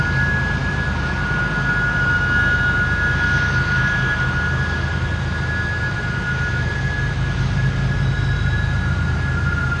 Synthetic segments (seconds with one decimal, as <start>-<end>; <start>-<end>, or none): 0.6-1.2